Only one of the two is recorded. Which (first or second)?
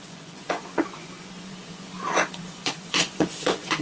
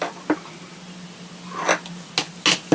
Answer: second